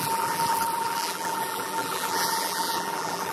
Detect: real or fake fake